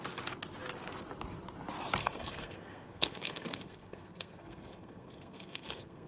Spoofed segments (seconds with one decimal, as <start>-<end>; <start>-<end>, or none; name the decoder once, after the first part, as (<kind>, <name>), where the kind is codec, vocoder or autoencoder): 2.0-6.1 (codec, SNAC)